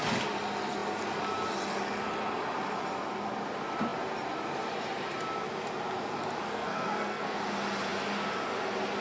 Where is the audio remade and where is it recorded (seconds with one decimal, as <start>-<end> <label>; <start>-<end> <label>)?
0.0-6.5 recorded; 6.5-7.4 remade; 7.4-9.0 recorded